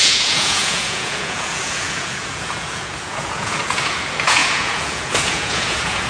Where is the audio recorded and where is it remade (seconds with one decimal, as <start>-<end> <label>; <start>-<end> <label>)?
0.0-6.1 remade